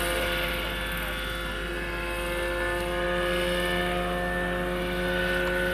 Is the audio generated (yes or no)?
no